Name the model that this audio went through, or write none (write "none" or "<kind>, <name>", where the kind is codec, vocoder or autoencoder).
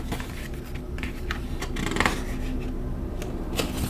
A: none